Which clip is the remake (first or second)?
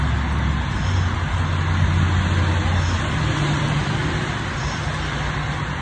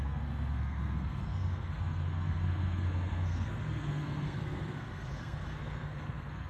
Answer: second